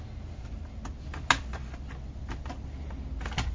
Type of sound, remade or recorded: recorded